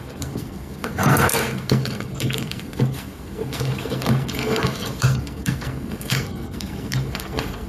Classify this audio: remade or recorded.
remade